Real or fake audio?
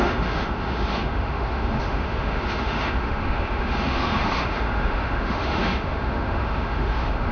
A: fake